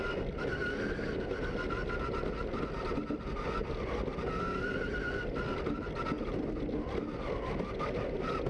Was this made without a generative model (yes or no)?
yes